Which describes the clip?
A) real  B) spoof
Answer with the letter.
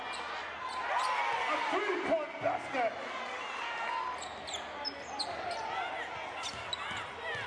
A